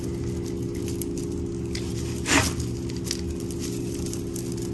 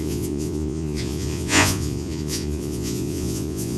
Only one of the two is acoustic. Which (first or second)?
first